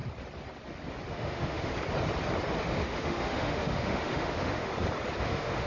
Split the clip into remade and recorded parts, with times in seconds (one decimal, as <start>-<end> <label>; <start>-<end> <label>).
0.0-1.1 recorded; 1.1-1.7 remade; 1.7-2.6 recorded; 2.6-4.7 remade; 4.7-5.2 recorded; 5.2-5.7 remade